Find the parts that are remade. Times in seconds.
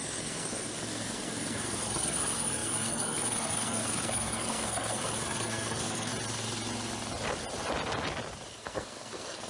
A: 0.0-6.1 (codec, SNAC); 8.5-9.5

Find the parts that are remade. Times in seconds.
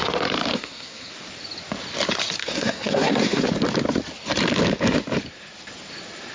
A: 0.5-1.1 (codec, SNAC); 2.4-3.4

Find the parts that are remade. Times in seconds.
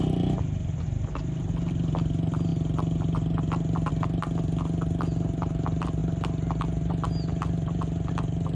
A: none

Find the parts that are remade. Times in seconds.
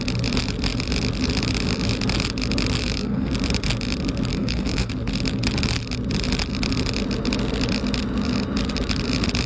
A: 2.8-3.3 (codec, SNAC); 4.3-4.9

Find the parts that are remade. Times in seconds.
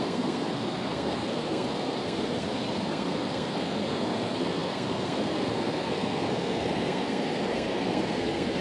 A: 0.0-8.6 (codec, SNAC)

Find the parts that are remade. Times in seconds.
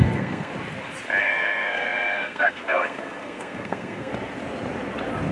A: 0.0-0.5 (codec, SNAC); 1.2-4.1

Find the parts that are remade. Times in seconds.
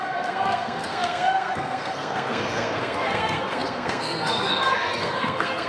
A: 0.0-5.7 (codec, SNAC)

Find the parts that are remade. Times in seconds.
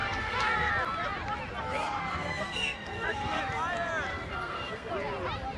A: 0.0-0.7 (codec, SNAC); 1.8-3.4; 4.1-4.9